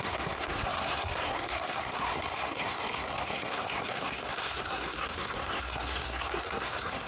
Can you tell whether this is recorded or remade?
remade